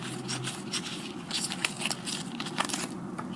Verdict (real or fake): real